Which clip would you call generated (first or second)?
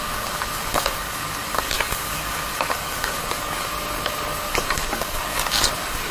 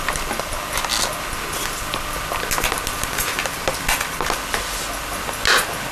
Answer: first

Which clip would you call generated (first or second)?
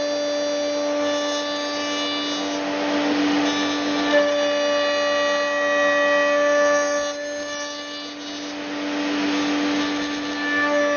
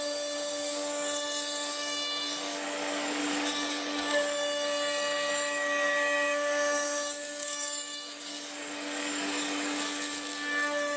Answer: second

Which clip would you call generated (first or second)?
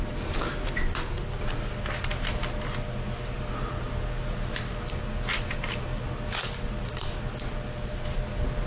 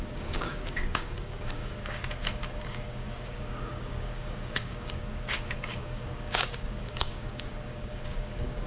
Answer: second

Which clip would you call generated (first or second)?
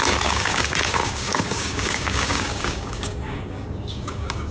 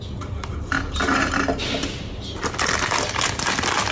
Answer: first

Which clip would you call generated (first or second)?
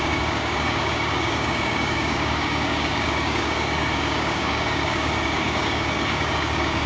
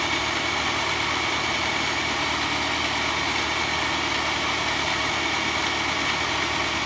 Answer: first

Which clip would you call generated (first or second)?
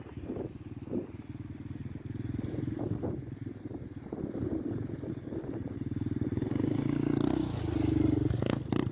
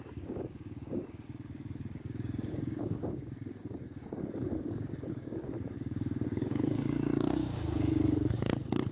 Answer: second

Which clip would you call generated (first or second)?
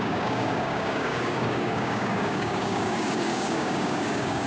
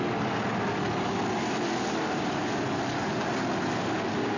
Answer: first